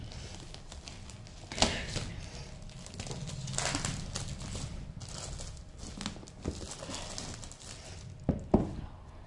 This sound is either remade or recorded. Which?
recorded